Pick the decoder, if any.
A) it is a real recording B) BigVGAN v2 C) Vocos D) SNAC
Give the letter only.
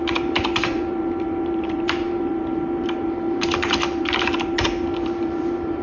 B